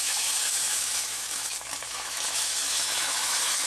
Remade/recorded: remade